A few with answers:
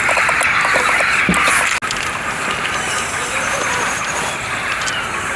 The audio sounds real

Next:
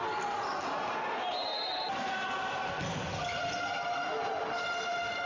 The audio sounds real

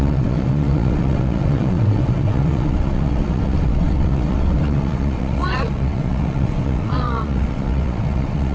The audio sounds fake